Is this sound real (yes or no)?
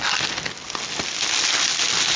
yes